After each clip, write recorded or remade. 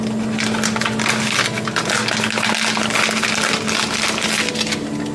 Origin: recorded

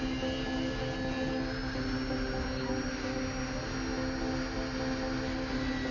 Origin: recorded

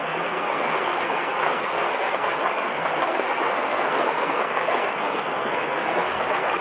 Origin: remade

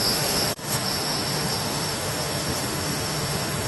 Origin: remade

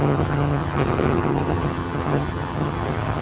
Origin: remade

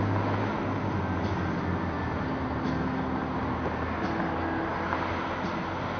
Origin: recorded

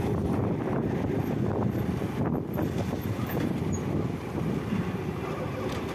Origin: recorded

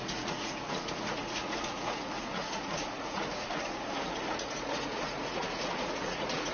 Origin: remade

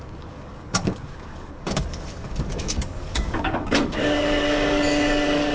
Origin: remade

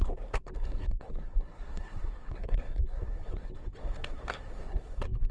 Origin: remade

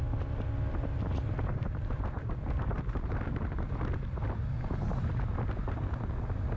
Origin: recorded